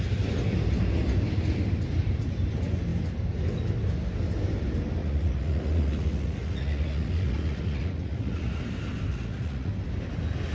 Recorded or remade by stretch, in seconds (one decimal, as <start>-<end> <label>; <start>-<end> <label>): 0.0-5.0 recorded; 5.0-8.6 remade; 8.6-9.1 recorded; 9.1-9.7 remade; 9.7-10.5 recorded